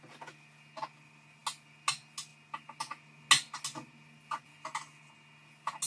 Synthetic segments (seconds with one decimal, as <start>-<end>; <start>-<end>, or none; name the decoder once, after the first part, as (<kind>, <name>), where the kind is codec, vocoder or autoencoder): none